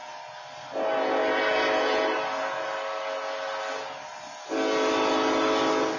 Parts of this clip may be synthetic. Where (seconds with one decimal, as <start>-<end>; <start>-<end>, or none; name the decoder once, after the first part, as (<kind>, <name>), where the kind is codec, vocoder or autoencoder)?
none